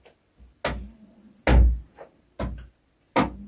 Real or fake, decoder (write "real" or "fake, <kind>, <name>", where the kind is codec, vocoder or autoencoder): real